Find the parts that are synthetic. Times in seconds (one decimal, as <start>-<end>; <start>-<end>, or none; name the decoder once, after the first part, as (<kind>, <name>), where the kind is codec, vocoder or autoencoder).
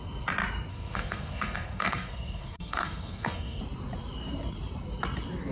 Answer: 0.7-3.6 (codec, SNAC)